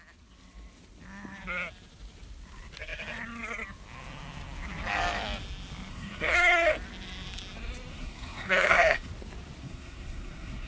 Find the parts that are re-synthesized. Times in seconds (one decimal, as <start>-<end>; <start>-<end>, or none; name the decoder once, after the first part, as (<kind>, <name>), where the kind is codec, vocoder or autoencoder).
5.9-6.7 (codec, SNAC); 7.9-9.1; 9.6-10.7